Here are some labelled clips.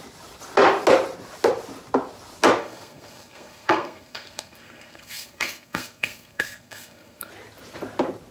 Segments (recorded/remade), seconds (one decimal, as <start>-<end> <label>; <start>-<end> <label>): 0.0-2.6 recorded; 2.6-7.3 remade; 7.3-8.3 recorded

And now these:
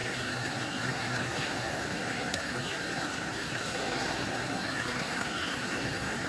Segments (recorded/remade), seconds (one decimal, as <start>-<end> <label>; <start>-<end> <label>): 0.0-6.3 remade

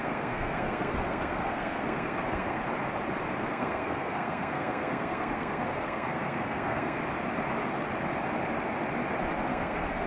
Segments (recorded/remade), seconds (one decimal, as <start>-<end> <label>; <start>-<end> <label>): 0.0-2.6 remade; 2.6-3.5 recorded; 3.5-7.0 remade; 7.0-9.5 recorded; 9.5-10.1 remade

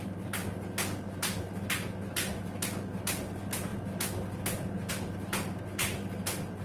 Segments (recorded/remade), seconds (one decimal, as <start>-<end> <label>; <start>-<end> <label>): 0.0-6.6 recorded